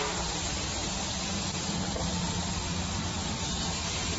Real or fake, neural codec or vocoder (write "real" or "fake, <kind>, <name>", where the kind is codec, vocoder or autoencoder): real